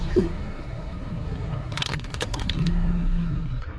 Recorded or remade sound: remade